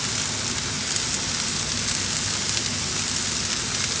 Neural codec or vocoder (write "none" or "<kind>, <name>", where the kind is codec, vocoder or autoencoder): none